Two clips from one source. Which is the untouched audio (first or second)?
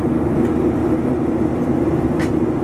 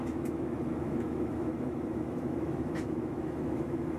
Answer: first